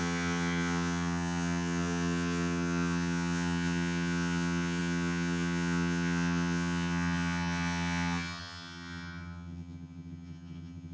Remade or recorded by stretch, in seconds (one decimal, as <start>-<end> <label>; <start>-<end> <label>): 0.0-10.9 remade